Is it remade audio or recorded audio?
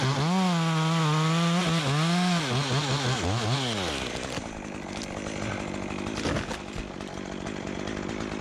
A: recorded